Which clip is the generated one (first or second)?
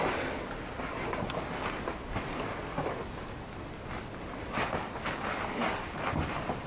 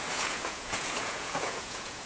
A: second